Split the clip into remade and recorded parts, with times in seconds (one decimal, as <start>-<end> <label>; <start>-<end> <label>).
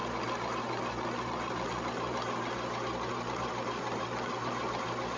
0.0-5.2 recorded